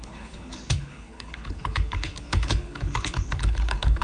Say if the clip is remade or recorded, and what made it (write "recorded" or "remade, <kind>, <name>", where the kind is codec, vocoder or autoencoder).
remade, codec, HILCodec